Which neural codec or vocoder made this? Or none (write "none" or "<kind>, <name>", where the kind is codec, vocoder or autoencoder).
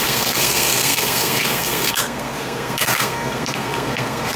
codec, SNAC